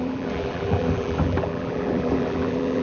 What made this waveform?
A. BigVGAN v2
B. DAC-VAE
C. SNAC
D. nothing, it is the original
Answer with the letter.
A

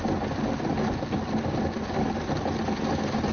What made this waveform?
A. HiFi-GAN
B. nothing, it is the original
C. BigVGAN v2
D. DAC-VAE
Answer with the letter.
B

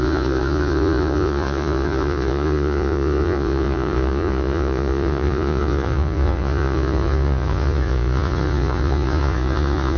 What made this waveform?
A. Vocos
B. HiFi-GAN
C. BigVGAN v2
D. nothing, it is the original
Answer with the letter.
A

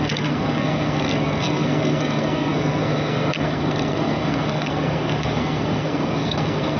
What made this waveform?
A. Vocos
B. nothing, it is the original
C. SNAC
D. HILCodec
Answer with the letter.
C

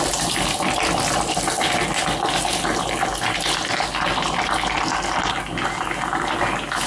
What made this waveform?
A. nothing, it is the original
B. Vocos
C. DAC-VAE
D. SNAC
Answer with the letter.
A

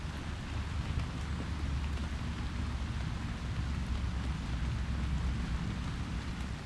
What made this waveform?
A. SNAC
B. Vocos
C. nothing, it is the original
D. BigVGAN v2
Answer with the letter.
C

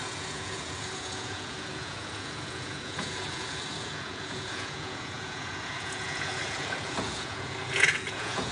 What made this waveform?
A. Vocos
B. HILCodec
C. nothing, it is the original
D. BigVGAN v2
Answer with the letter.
A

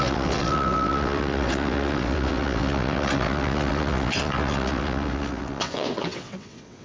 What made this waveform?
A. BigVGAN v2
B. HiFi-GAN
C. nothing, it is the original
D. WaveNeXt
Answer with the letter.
D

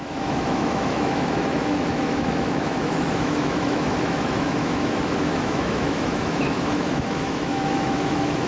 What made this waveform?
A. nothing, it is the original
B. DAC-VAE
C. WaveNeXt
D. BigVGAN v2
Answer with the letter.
B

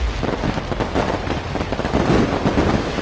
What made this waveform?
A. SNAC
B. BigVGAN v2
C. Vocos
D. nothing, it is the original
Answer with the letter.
B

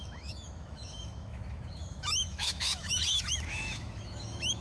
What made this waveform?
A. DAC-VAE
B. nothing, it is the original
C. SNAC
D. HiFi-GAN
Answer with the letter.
A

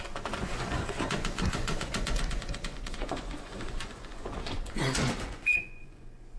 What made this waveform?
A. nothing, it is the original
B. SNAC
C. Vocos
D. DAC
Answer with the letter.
C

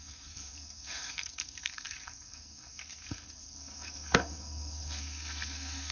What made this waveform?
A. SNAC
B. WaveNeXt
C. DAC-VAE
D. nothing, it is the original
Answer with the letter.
A